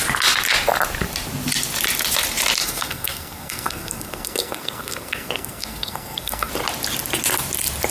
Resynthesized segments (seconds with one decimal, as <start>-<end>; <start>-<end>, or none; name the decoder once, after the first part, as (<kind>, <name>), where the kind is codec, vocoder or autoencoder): 2.6-6.5 (codec, SNAC)